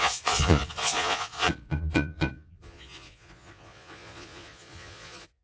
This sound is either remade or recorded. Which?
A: remade